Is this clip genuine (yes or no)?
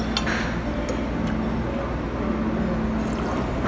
yes